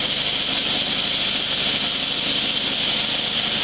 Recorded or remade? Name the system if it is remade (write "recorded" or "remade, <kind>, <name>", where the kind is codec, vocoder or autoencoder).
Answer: recorded